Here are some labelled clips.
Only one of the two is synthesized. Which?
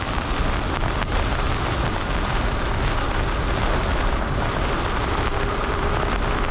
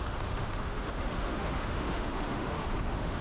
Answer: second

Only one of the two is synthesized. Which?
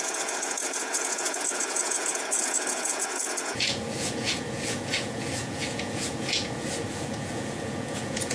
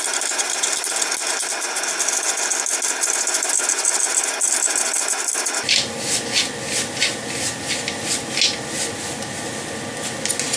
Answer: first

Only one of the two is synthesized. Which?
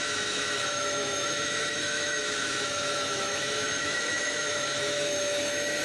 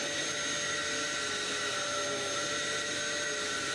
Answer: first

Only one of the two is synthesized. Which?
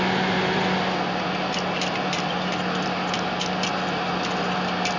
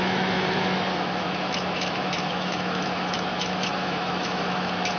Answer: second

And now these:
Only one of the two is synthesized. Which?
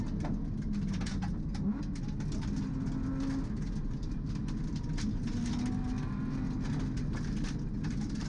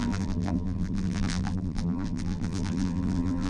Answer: second